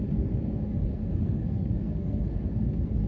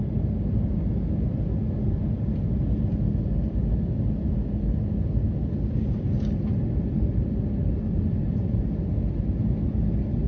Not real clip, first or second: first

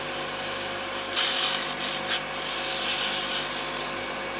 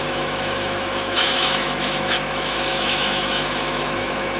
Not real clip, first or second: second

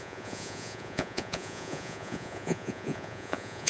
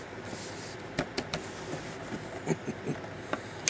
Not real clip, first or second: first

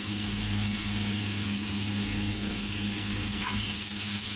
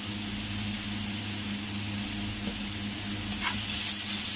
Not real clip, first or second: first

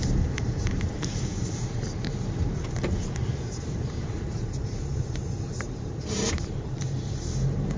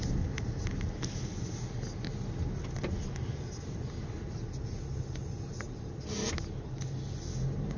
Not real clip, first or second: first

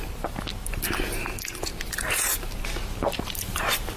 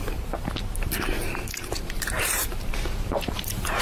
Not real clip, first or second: second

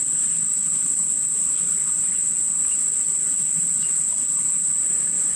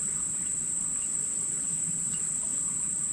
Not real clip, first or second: second